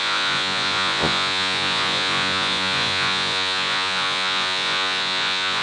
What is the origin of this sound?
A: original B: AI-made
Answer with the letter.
B